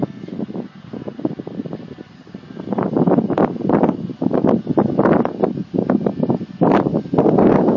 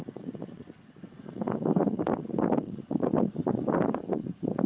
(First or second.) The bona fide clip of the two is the first